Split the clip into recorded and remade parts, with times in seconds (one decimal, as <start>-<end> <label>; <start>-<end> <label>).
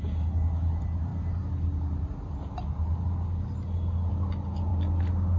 0.0-5.4 recorded